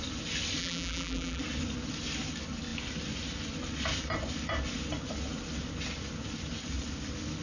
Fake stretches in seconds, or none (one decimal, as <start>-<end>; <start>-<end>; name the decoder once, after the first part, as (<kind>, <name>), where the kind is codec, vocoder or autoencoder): 0.6-1.4 (vocoder, BigVGAN v2)